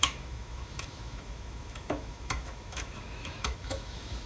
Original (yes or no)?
no